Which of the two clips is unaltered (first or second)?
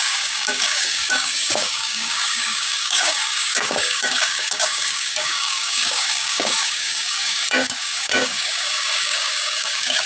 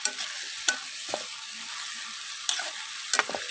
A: second